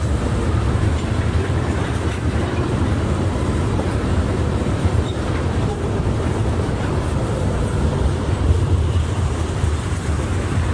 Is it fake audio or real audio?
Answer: fake